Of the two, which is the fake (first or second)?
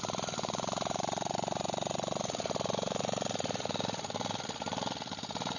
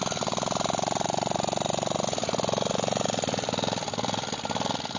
first